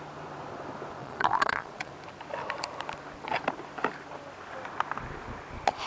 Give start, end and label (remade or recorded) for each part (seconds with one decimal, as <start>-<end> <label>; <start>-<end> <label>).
0.0-1.0 recorded; 1.0-1.9 remade; 1.9-5.9 recorded

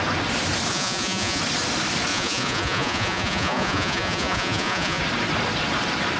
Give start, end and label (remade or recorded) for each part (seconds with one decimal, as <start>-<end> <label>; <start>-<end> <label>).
0.0-0.7 recorded; 0.7-1.4 remade; 1.4-2.1 recorded; 2.1-5.0 remade; 5.0-6.2 recorded

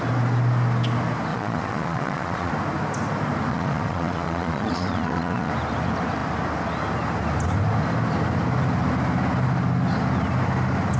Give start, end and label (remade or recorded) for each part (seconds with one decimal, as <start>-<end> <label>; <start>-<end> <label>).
0.0-1.3 recorded; 1.3-2.5 remade; 2.5-3.5 recorded; 3.5-5.5 remade; 5.5-11.0 recorded